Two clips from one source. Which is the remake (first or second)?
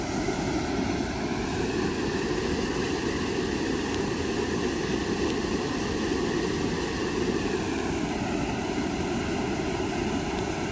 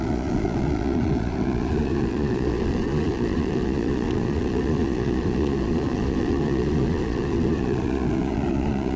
second